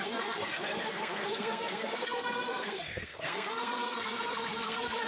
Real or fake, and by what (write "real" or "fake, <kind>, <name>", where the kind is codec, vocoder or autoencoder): fake, codec, SNAC